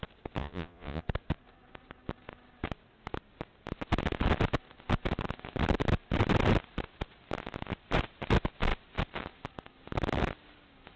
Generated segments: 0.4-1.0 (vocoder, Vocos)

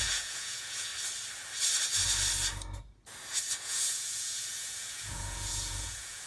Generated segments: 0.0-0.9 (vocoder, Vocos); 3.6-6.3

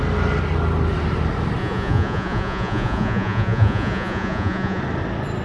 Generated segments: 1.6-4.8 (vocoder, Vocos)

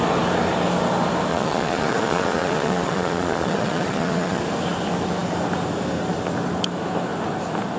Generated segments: 1.3-4.4 (vocoder, Vocos)

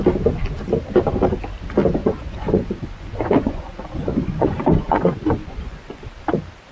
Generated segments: 2.0-6.0 (vocoder, Vocos)

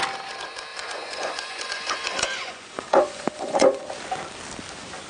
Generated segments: 0.7-3.8 (vocoder, Vocos)